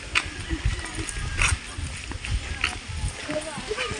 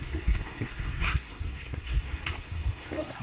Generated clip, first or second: second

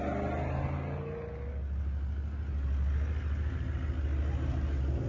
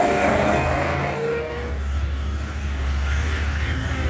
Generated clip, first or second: second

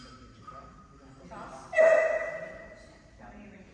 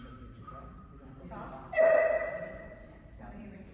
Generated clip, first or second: second